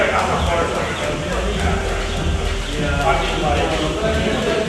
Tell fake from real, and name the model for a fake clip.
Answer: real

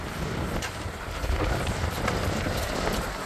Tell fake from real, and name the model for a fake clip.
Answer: real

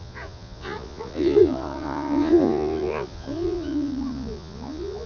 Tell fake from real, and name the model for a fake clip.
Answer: fake, vocoder, Vocos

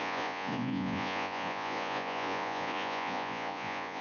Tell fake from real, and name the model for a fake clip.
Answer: fake, vocoder, Vocos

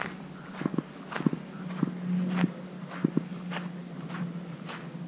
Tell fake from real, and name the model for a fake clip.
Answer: real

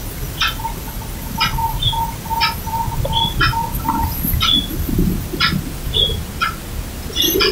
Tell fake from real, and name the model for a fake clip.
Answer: real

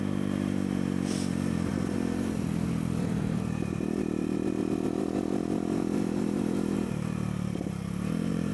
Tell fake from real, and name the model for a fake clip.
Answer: fake, vocoder, BigVGAN v2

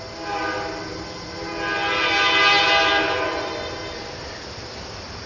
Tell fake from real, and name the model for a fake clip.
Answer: real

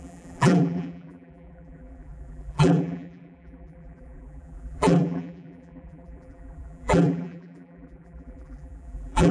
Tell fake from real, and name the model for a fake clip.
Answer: fake, vocoder, BigVGAN v2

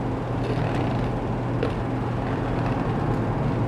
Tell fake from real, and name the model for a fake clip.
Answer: real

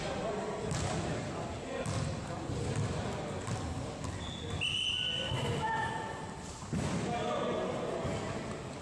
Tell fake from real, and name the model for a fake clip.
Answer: real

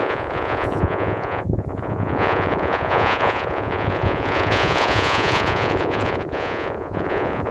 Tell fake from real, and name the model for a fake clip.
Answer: fake, vocoder, Vocos